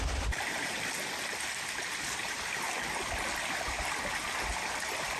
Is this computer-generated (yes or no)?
no